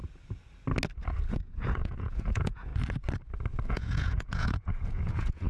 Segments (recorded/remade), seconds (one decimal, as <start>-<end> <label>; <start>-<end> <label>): 0.0-1.3 recorded; 1.3-2.7 remade; 2.7-3.7 recorded; 3.7-5.5 remade